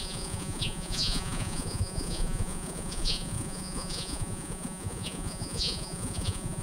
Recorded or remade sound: remade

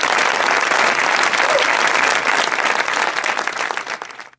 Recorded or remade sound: recorded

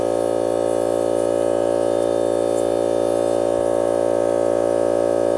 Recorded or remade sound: recorded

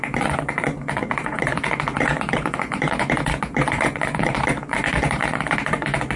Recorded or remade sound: remade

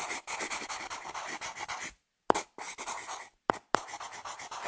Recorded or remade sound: recorded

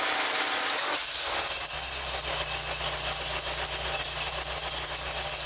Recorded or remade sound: recorded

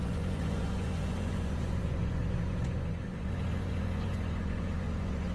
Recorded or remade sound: remade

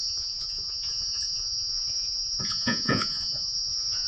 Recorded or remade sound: remade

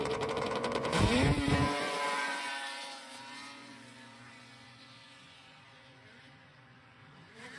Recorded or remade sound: remade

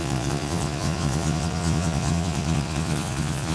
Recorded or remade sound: remade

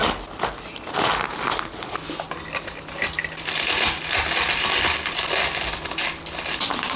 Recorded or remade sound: recorded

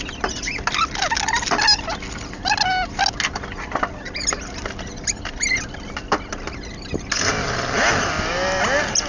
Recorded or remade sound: recorded